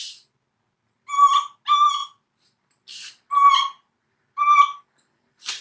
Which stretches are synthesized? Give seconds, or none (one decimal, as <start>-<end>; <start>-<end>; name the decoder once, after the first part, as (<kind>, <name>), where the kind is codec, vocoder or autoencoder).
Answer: none